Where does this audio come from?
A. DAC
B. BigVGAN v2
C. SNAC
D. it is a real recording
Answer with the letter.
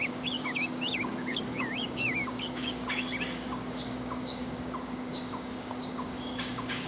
A